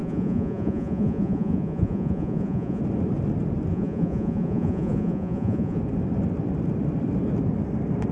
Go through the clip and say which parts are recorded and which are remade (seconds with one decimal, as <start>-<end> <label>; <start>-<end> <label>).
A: 0.0-2.8 remade; 2.8-3.7 recorded; 3.7-5.8 remade; 5.8-8.1 recorded